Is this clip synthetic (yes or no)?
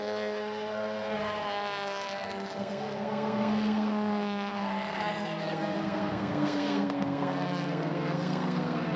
yes